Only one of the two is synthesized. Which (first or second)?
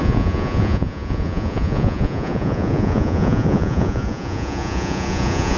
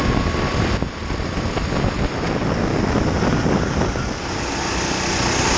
first